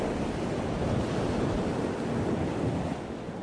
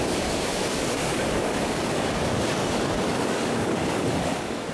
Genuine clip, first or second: first